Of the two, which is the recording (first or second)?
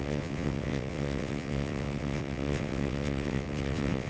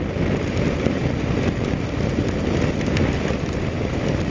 second